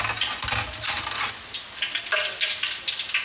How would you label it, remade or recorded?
recorded